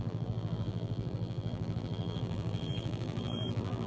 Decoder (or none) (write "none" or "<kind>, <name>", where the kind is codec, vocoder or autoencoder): vocoder, BigVGAN v2